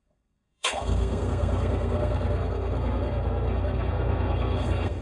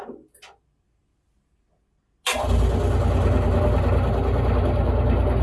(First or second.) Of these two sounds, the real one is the second